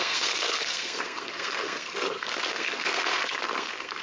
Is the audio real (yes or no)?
no